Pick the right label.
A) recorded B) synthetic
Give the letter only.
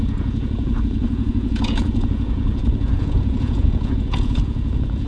B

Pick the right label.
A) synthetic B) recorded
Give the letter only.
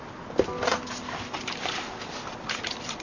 B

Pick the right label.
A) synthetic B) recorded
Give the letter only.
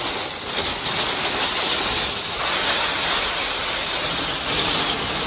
B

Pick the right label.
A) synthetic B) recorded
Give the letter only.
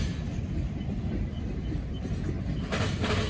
B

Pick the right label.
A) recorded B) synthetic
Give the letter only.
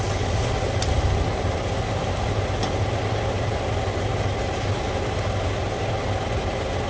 A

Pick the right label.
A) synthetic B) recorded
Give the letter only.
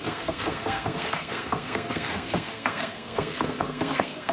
A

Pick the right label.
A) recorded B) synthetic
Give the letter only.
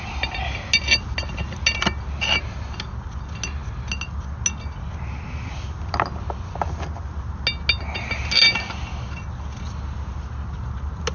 A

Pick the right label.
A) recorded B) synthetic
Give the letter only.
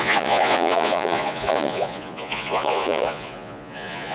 B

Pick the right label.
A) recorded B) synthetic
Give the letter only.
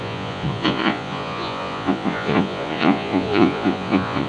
B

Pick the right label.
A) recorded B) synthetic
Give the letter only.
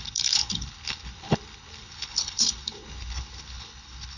B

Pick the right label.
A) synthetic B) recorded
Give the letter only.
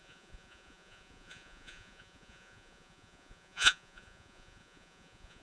A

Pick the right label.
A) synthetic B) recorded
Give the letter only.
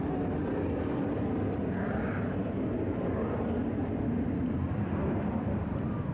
B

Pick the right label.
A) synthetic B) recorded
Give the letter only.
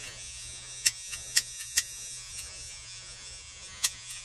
A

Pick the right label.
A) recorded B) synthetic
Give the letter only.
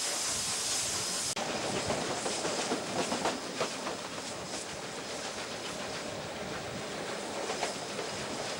A